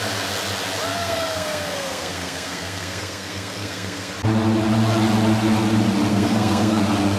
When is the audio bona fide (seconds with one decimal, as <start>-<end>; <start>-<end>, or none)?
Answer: 0.0-0.9; 4.1-6.1; 6.8-7.2